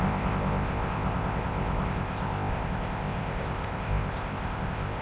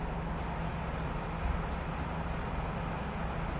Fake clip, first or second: first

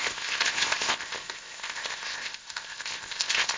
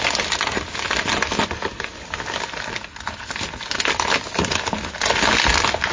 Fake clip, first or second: first